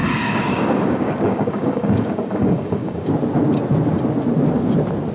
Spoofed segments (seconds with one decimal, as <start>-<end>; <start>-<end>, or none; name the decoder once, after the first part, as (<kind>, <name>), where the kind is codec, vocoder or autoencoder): 0.0-3.1 (codec, DAC)